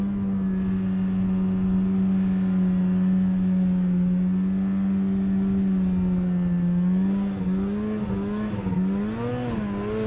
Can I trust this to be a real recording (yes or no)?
yes